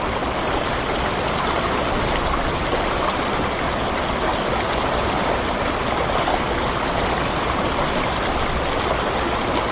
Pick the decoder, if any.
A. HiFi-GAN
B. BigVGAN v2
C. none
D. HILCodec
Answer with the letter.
C